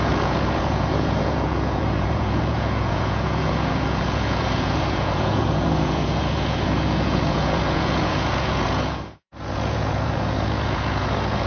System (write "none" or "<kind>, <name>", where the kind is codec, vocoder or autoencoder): vocoder, Vocos